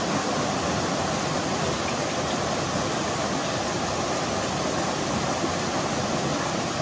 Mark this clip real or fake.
real